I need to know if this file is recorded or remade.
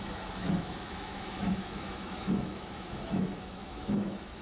remade